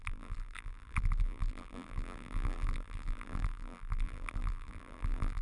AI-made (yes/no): yes